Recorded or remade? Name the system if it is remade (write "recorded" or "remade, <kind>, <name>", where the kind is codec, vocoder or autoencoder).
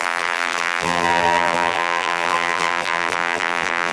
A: remade, vocoder, BigVGAN v2